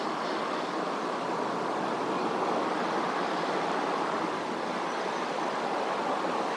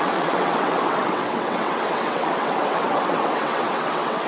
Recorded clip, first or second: first